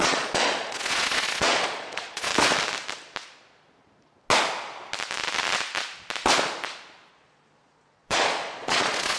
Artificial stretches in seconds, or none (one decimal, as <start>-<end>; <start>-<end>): 0.0-2.3; 7.1-9.2